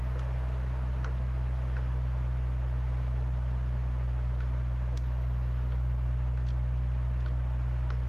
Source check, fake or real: real